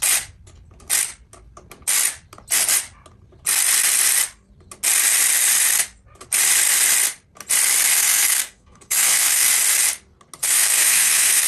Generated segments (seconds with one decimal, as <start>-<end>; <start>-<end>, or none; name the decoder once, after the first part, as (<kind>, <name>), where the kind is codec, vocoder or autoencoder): 7.9-9.5 (codec, SNAC); 10.4-11.5